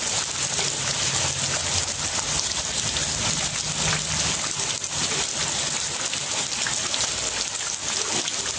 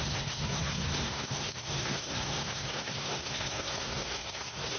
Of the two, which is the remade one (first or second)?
second